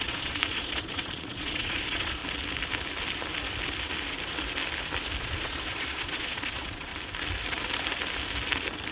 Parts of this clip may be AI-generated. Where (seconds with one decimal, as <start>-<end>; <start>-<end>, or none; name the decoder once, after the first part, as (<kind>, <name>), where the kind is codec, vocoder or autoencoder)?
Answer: 0.0-2.2 (vocoder, Vocos); 5.2-6.9